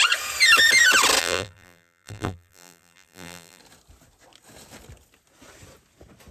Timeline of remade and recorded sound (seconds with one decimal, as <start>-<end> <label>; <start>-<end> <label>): 0.0-1.2 recorded; 1.2-3.6 remade; 3.6-6.3 recorded